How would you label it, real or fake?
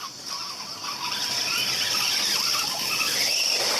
real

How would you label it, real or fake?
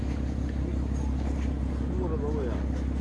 real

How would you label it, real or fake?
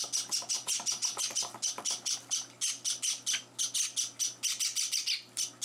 real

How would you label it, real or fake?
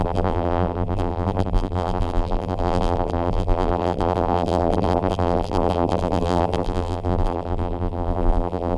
fake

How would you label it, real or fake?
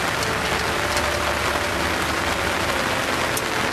real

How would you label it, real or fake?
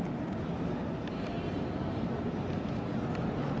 real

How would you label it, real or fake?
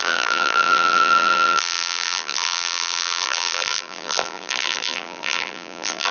fake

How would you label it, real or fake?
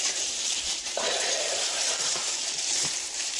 fake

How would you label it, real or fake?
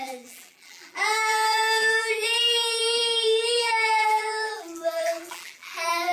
fake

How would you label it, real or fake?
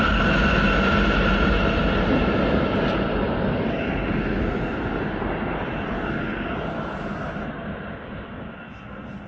real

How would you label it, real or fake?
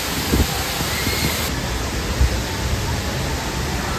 real